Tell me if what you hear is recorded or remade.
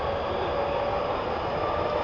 recorded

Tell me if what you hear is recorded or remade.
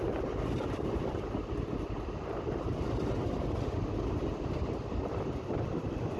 recorded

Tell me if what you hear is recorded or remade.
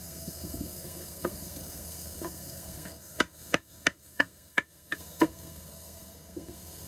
remade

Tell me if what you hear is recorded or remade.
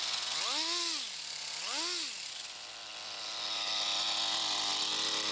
recorded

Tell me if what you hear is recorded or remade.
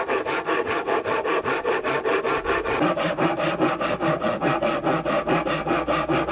recorded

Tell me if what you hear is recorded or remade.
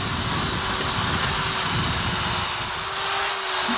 recorded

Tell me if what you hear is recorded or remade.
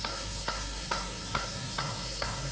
remade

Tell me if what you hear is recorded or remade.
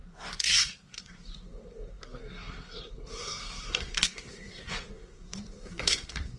remade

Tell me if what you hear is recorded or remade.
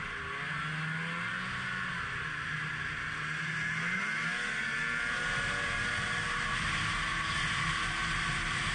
recorded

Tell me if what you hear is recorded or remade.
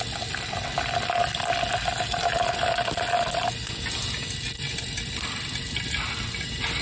recorded